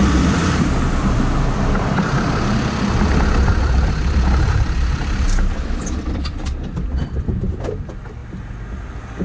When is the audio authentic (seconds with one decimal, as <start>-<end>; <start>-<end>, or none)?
8.2-9.2